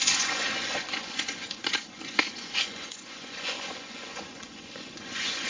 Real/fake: fake